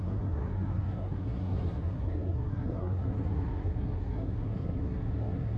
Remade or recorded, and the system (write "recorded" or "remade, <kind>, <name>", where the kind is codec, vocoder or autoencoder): remade, codec, SNAC